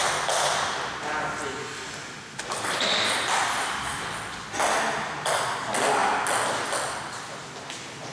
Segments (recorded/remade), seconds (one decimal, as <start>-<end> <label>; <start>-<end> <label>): 0.0-8.1 recorded